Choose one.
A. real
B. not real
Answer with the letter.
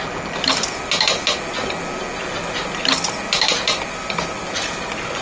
A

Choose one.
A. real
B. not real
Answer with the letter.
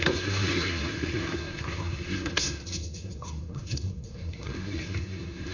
B